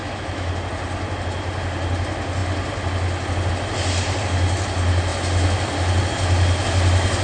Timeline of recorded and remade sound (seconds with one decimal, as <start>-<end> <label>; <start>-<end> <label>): 0.0-0.5 remade; 0.5-7.2 recorded